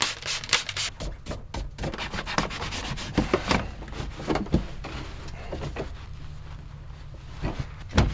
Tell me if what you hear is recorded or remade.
recorded